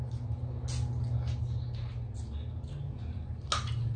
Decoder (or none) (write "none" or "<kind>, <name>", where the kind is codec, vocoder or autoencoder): none